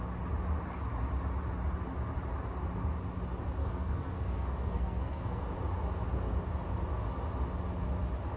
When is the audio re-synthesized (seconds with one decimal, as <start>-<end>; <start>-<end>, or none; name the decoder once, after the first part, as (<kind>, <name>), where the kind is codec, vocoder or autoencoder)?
3.6-5.4 (codec, SNAC)